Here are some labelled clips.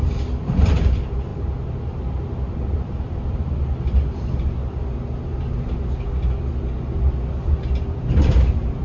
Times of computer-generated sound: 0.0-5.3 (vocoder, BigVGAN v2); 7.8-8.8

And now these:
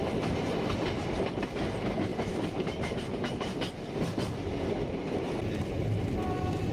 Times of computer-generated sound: 2.1-3.7 (vocoder, BigVGAN v2)

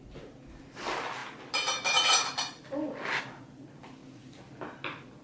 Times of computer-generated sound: none

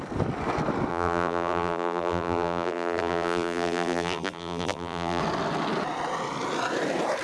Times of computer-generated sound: 0.9-5.2 (vocoder, BigVGAN v2)